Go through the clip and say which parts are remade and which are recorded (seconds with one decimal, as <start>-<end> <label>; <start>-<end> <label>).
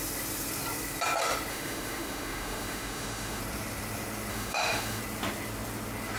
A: 0.0-1.5 recorded; 1.5-3.4 remade; 3.4-4.3 recorded; 4.3-5.0 remade; 5.0-6.2 recorded